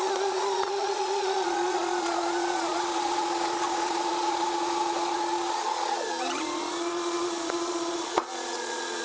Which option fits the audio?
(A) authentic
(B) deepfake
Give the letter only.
B